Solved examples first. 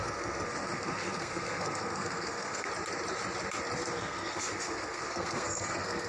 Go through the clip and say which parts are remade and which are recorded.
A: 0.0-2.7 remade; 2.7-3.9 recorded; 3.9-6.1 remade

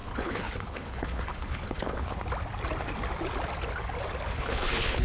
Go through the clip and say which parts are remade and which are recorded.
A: 0.0-2.2 remade; 2.2-4.3 recorded; 4.3-5.0 remade

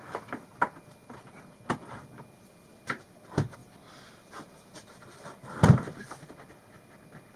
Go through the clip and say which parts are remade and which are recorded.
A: 0.0-7.4 recorded

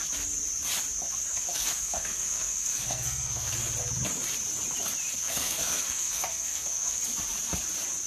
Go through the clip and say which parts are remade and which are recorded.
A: 0.0-1.3 recorded; 1.3-3.5 remade; 3.5-5.2 recorded; 5.2-7.0 remade; 7.0-8.1 recorded

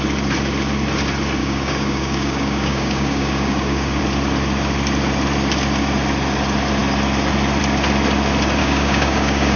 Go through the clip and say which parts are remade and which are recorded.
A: 0.0-1.4 recorded; 1.4-4.0 remade; 4.0-8.6 recorded; 8.6-9.6 remade

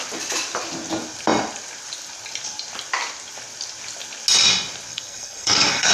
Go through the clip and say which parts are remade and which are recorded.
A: 0.0-4.9 recorded; 4.9-5.9 remade